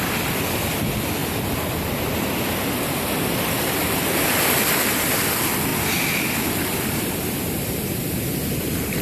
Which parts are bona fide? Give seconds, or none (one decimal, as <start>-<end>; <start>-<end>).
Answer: 1.2-3.6